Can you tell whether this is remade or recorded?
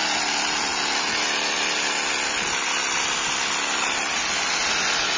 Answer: recorded